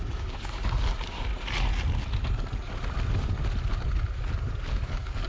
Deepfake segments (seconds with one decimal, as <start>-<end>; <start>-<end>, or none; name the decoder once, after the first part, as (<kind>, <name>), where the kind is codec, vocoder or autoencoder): 0.0-1.3 (codec, DAC); 4.5-5.3